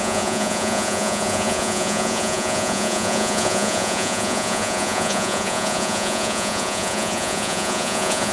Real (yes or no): no